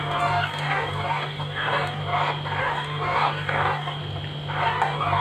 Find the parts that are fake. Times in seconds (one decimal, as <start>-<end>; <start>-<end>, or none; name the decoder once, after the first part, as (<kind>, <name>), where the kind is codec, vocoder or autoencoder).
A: 0.0-2.0 (codec, DAC); 2.6-4.0; 4.6-5.2